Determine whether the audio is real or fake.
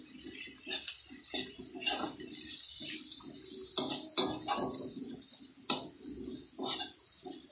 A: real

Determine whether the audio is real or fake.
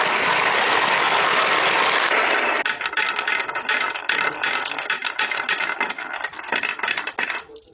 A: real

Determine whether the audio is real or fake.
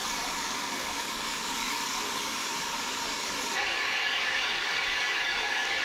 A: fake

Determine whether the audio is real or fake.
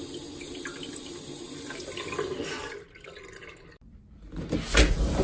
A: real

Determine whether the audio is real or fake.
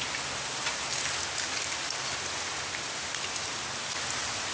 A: real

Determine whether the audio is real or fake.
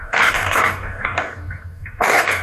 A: fake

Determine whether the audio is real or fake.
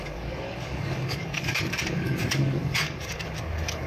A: fake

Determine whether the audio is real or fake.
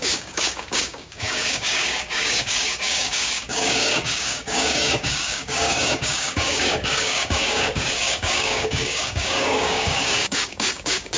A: fake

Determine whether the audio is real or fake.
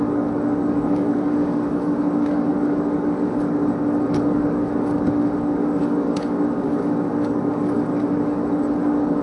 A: fake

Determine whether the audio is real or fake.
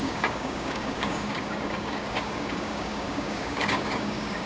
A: fake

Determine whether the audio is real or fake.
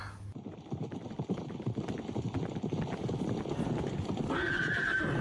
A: real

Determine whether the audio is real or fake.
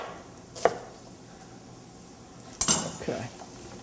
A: real